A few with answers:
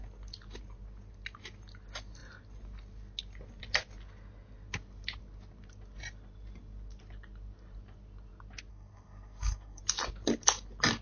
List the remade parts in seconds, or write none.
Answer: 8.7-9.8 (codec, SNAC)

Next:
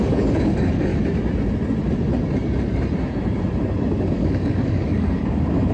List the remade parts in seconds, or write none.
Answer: 0.0-0.9 (codec, DAC); 4.0-5.7

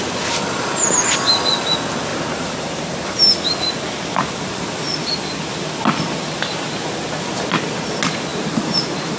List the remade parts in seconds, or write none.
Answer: 2.1-3.4 (vocoder, BigVGAN v2); 4.1-4.7; 8.3-9.2